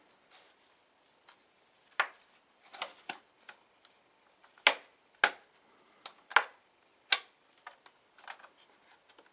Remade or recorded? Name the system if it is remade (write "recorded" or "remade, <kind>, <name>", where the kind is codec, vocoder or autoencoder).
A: recorded